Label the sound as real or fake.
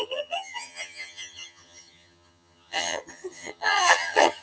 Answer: fake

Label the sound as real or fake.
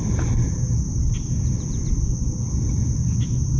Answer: real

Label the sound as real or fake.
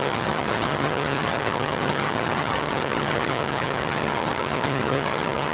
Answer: fake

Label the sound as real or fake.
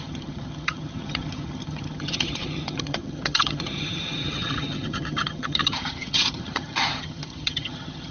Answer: fake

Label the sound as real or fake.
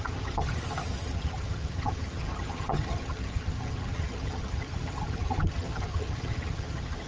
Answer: fake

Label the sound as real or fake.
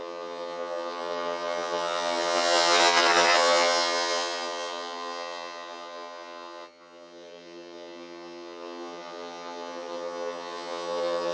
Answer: fake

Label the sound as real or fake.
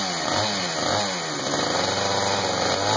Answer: real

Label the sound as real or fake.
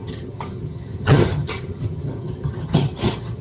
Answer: fake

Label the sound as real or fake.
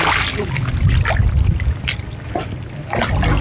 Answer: real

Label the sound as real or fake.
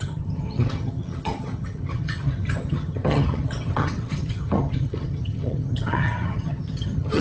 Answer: fake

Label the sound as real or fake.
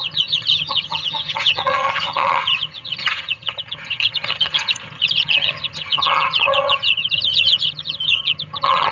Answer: fake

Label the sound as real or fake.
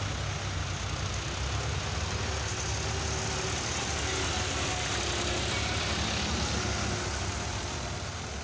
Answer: real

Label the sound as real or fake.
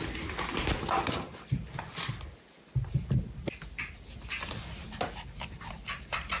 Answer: real